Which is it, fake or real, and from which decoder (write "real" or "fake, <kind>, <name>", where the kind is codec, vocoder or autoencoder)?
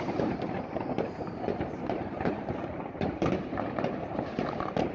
fake, vocoder, BigVGAN v2